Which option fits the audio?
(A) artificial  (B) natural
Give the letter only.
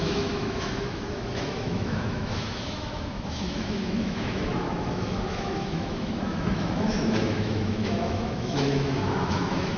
A